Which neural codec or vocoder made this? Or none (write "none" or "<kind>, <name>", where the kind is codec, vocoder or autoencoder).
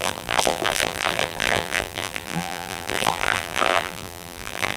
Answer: vocoder, BigVGAN v2